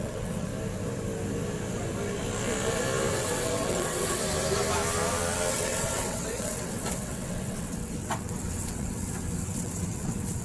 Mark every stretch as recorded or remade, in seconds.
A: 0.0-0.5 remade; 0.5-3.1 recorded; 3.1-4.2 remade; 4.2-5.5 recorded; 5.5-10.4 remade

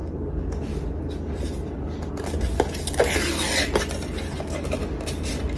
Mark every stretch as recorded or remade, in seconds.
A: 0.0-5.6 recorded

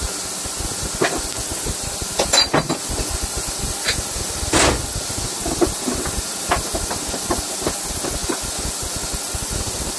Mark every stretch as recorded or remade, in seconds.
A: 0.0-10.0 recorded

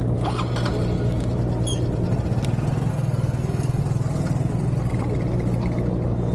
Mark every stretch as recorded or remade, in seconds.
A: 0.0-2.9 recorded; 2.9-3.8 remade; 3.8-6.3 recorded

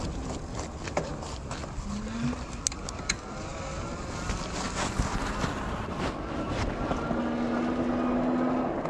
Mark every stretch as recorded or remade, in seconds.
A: 0.0-8.9 recorded

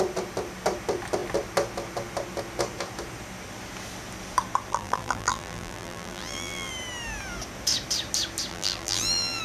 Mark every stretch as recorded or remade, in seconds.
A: 0.0-4.7 recorded; 4.7-6.7 remade; 6.7-8.5 recorded; 8.5-9.4 remade